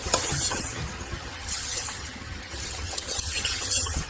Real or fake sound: fake